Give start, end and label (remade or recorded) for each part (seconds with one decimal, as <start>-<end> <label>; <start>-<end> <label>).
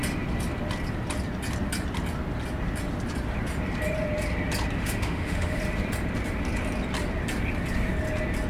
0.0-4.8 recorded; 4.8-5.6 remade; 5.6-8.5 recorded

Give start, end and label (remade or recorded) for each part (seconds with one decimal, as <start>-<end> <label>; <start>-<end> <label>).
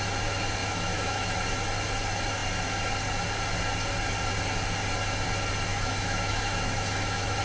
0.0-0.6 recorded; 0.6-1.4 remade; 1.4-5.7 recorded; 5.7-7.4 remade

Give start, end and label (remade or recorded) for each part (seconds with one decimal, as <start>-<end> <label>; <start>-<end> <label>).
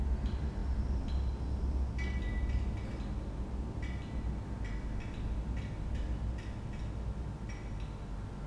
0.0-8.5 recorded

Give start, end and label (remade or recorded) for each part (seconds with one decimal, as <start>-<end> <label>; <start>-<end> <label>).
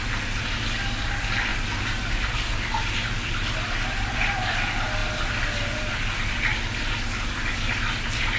0.0-8.4 recorded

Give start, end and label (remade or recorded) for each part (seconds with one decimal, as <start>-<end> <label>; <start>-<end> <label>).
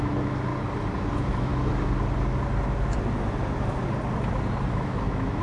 0.0-0.5 remade; 0.5-1.1 recorded; 1.1-1.5 remade; 1.5-4.7 recorded; 4.7-5.4 remade